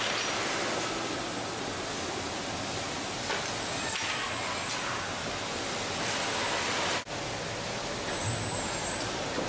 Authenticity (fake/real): real